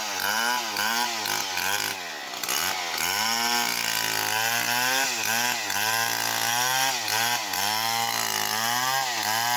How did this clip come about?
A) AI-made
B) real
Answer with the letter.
B